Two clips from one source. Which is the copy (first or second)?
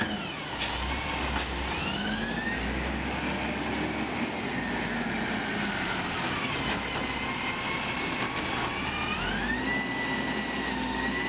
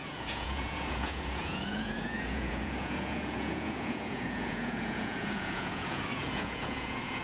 second